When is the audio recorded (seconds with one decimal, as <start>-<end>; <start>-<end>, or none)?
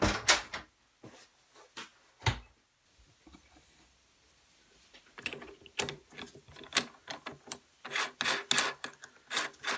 0.0-9.8